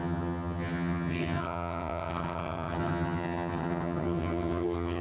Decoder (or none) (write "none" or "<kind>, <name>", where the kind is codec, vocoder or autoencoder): vocoder, HiFi-GAN